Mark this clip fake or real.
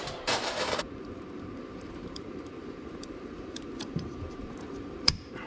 fake